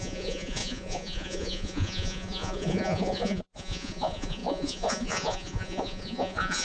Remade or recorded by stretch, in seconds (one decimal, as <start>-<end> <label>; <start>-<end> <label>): 0.0-6.6 remade

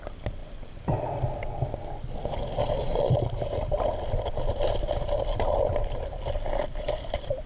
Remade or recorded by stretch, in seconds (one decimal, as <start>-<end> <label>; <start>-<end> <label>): 0.0-2.6 recorded; 2.6-3.1 remade; 3.1-7.5 recorded